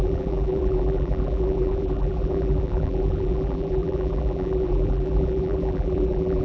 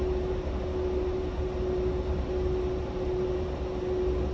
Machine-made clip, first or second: first